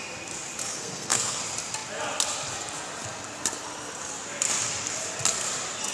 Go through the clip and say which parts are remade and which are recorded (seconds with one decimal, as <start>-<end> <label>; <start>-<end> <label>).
0.0-0.7 recorded; 0.7-1.4 remade; 1.4-5.9 recorded